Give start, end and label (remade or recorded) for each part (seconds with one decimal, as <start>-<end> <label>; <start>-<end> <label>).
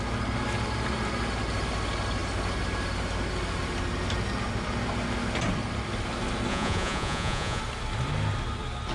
0.0-6.5 recorded; 6.5-7.6 remade; 7.6-8.9 recorded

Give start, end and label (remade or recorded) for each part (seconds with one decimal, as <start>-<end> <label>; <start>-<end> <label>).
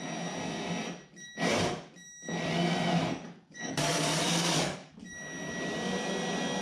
0.0-3.0 recorded; 3.0-4.9 remade; 4.9-6.6 recorded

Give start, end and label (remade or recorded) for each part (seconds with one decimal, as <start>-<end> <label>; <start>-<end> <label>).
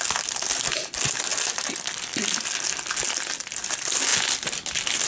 0.0-5.1 recorded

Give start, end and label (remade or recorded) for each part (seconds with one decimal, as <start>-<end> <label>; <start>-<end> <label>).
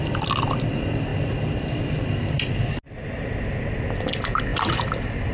0.0-5.3 recorded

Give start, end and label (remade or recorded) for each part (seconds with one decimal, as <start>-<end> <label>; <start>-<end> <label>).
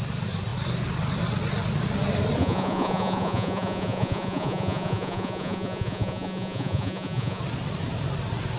0.0-2.4 recorded; 2.4-7.4 remade; 7.4-8.6 recorded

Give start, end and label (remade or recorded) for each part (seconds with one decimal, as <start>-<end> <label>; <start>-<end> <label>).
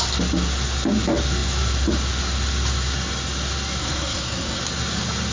0.0-3.8 recorded; 3.8-4.6 remade; 4.6-5.3 recorded